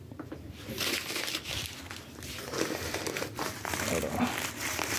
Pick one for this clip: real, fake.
fake